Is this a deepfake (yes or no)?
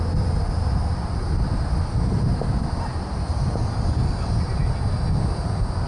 no